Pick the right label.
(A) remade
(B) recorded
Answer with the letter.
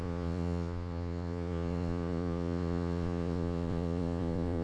A